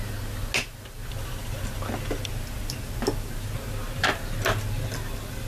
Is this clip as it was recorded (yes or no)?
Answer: yes